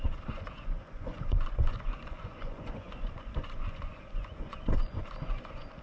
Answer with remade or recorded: remade